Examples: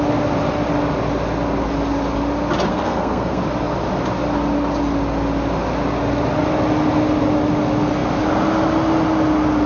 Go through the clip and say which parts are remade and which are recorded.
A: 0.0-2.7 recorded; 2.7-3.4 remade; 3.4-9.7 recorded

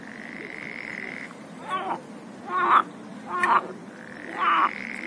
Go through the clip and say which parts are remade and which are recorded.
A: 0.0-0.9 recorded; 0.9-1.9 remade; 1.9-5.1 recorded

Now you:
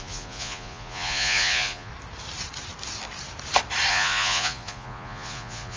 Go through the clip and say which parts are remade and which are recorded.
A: 0.0-1.9 remade; 1.9-3.9 recorded; 3.9-5.8 remade

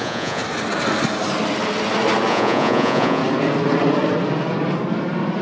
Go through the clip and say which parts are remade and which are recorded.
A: 0.0-0.4 remade; 0.4-2.3 recorded; 2.3-3.2 remade; 3.2-5.4 recorded

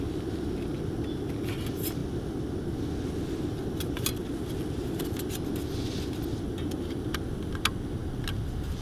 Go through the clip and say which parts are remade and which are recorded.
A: 0.0-8.8 recorded

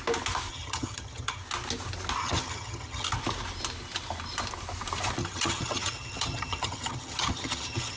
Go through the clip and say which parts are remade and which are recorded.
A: 0.0-0.5 recorded; 0.5-1.4 remade; 1.4-2.2 recorded; 2.2-3.1 remade; 3.1-5.2 recorded; 5.2-8.0 remade

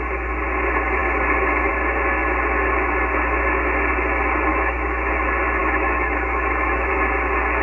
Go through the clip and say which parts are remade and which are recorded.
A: 0.0-4.5 recorded; 4.5-5.1 remade; 5.1-5.6 recorded; 5.6-6.9 remade; 6.9-7.6 recorded